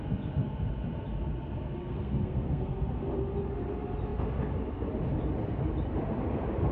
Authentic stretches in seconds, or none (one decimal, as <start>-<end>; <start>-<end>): 0.0-1.8; 2.7-6.7